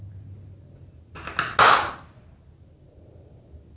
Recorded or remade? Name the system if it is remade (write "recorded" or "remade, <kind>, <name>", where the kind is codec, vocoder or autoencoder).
recorded